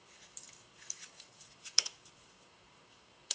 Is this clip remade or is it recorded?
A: remade